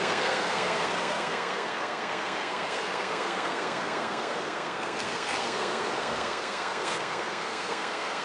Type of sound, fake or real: fake